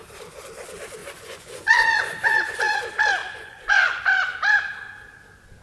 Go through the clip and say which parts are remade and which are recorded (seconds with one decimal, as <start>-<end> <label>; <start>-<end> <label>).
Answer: 0.0-1.0 recorded; 1.0-2.8 remade; 2.8-3.2 recorded; 3.2-4.0 remade; 4.0-5.6 recorded